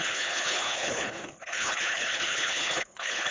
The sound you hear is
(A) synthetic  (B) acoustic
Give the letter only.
A